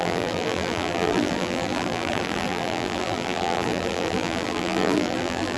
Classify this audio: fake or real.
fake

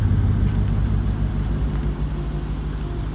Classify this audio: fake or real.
real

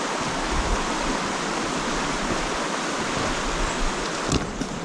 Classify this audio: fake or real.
real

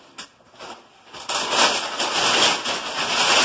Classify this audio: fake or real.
real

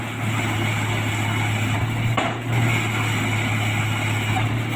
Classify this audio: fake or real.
real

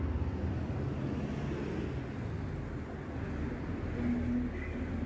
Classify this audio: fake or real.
real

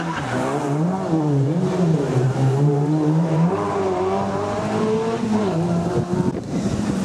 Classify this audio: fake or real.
fake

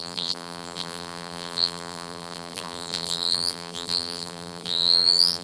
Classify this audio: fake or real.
fake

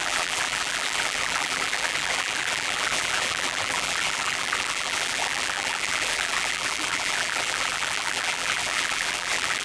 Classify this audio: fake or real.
fake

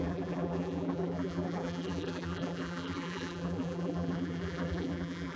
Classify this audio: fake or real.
fake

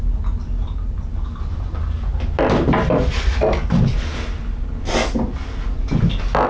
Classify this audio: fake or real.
real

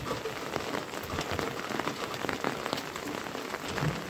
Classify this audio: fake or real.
real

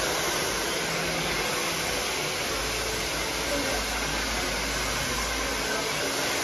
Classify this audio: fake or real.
real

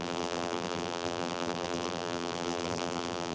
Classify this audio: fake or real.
fake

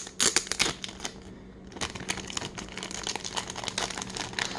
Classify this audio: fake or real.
real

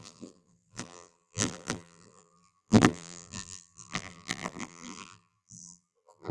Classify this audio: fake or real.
fake